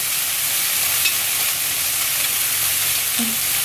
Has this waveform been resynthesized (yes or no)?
no